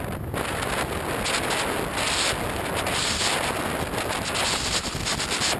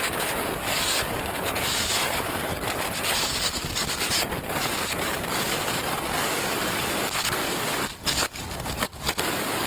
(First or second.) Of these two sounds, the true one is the first